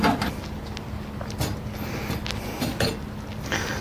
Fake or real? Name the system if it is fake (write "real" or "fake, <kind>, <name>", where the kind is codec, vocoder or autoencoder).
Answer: real